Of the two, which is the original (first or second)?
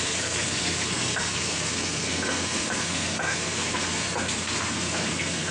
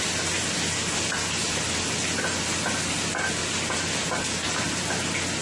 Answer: second